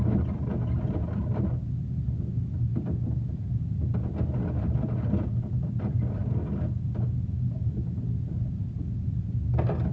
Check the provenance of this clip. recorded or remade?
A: recorded